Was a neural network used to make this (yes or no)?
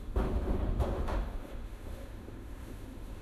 yes